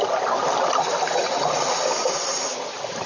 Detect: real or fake real